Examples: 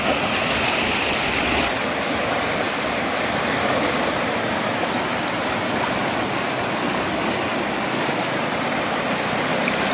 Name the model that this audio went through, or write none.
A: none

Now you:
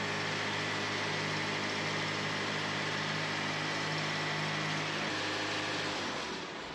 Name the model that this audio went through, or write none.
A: none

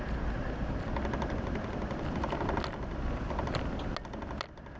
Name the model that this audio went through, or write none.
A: none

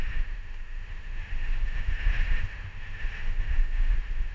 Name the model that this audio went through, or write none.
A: autoencoder, DAC-VAE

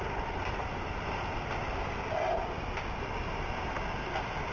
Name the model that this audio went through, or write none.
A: none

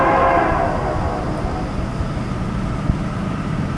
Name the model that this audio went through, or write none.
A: none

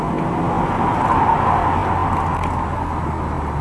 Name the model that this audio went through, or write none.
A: none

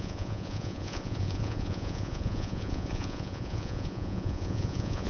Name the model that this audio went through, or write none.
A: vocoder, Vocos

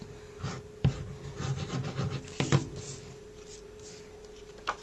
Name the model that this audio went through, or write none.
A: none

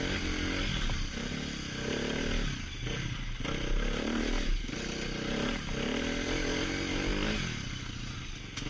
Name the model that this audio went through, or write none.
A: none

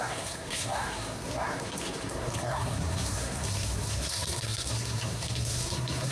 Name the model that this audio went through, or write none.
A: codec, SNAC